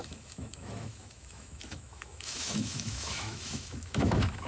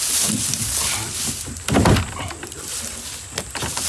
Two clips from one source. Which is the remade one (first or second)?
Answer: first